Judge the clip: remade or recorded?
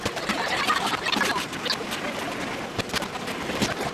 recorded